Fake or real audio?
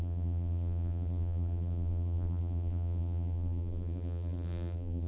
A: fake